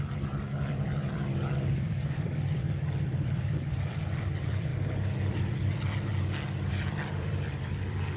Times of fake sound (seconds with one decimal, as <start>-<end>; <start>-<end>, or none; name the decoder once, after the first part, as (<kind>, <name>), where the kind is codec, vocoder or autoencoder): 0.0-4.7 (vocoder, BigVGAN v2); 5.3-6.1; 6.7-8.2